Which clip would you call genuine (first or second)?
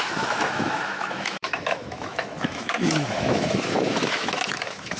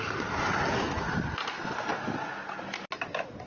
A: second